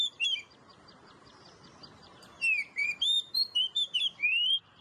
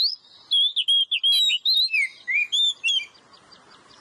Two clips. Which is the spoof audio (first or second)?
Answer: first